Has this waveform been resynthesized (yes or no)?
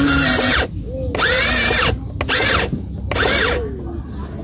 no